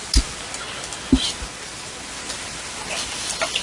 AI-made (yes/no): no